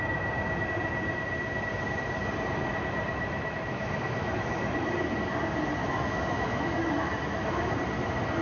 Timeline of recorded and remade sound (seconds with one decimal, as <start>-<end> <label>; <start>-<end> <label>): 0.0-3.1 recorded; 3.1-4.9 remade; 4.9-5.8 recorded; 5.8-7.8 remade; 7.8-8.4 recorded